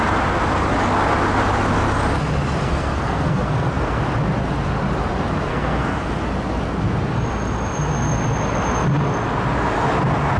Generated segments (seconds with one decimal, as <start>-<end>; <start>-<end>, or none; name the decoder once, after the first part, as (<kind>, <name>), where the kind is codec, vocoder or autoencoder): 2.6-4.0 (codec, SNAC); 5.5-6.2